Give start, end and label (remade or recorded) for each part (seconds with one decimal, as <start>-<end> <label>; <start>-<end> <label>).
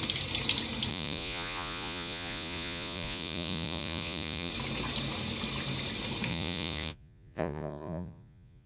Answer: 0.0-0.9 recorded; 0.9-4.5 remade; 4.5-6.3 recorded; 6.3-8.7 remade